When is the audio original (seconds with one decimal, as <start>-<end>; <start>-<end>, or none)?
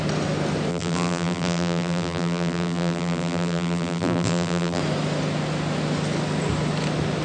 0.0-0.7; 4.8-7.2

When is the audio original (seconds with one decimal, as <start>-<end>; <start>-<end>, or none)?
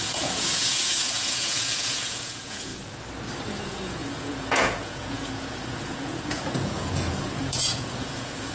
2.7-3.6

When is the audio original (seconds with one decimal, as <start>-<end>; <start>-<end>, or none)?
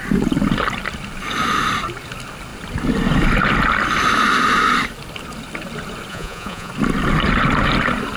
0.0-6.1; 6.7-8.2